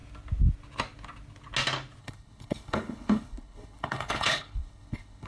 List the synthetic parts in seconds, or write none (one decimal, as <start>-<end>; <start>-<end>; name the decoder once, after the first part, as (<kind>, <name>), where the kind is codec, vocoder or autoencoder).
2.0-5.3 (codec, HILCodec)